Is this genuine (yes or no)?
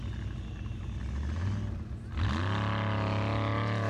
yes